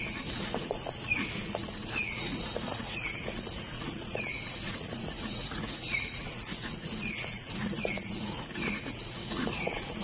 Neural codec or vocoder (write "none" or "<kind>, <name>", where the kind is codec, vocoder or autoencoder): vocoder, Vocos